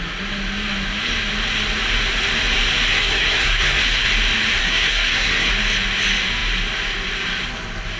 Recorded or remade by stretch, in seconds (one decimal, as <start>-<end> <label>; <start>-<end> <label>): 0.0-2.9 recorded; 2.9-3.8 remade; 3.8-4.6 recorded; 4.6-5.5 remade; 5.5-8.0 recorded